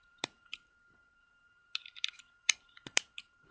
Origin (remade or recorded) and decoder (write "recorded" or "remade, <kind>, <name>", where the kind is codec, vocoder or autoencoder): remade, vocoder, BigVGAN v2